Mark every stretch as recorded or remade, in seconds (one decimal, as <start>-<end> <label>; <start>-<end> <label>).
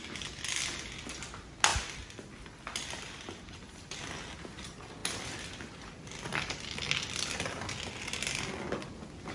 0.0-1.7 recorded; 1.7-4.2 remade; 4.2-5.0 recorded; 5.0-7.7 remade; 7.7-9.3 recorded